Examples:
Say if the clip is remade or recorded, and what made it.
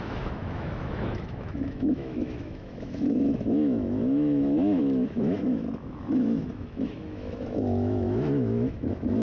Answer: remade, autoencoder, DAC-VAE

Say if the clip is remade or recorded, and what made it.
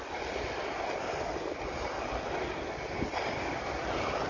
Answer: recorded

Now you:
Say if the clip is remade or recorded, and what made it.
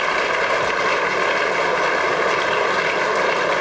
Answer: recorded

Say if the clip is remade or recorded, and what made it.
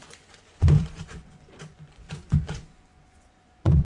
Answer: remade, vocoder, Vocos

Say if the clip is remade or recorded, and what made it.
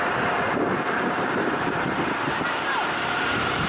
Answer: remade, vocoder, BigVGAN v2